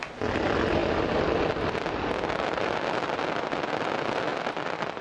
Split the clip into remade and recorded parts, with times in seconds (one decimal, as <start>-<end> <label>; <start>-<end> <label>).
0.0-4.3 recorded; 4.3-5.0 remade